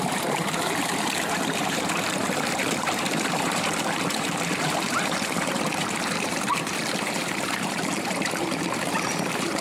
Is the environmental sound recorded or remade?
remade